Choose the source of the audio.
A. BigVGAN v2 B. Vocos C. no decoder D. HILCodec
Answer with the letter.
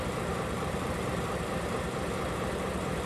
C